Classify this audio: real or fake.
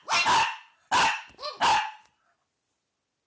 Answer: real